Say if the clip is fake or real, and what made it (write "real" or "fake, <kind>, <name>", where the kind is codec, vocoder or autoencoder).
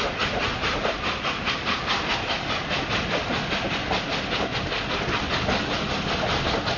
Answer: real